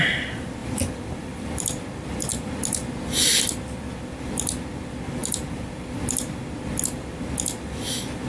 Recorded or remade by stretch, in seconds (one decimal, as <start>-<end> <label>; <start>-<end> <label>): 0.0-0.6 recorded; 0.6-1.9 remade; 1.9-5.2 recorded; 5.2-6.4 remade; 6.4-8.3 recorded